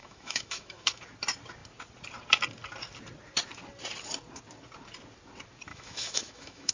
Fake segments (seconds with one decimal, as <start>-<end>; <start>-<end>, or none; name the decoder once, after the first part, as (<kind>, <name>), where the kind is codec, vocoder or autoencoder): 0.0-1.0 (autoencoder, DAC-VAE); 5.7-6.7